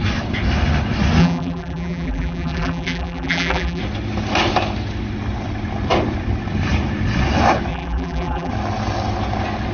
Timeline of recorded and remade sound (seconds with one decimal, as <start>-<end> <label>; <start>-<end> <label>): 0.0-1.2 recorded; 1.2-3.8 remade; 3.8-7.7 recorded; 7.7-8.5 remade; 8.5-9.7 recorded